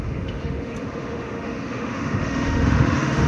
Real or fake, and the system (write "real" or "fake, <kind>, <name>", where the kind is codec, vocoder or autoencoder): fake, autoencoder, DAC-VAE